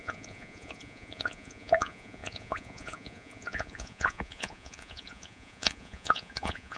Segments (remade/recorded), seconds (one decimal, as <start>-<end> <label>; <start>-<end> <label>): 0.0-6.8 remade